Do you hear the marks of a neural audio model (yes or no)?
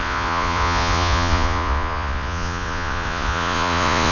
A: yes